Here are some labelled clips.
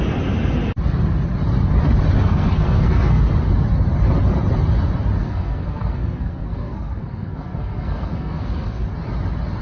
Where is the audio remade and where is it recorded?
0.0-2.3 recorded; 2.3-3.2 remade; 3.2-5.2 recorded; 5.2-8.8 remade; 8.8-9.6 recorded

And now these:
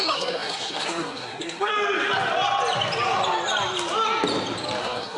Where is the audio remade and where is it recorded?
0.0-1.7 remade; 1.7-4.8 recorded; 4.8-5.2 remade